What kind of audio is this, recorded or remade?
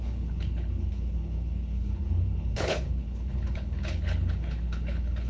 remade